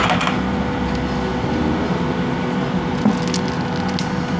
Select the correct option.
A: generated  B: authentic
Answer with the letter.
B